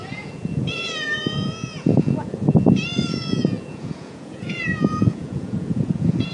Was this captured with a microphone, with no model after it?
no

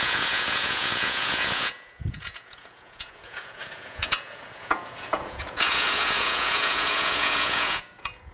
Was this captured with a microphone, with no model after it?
no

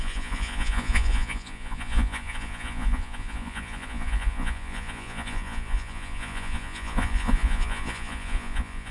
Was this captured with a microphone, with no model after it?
no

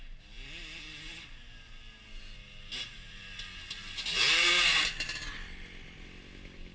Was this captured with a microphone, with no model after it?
yes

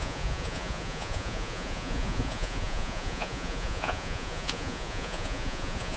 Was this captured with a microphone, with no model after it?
no